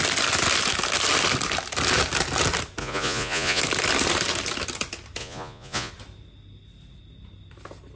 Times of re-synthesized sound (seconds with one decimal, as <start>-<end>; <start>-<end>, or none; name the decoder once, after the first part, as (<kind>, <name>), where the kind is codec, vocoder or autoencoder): 2.8-3.6 (vocoder, Vocos); 5.2-5.9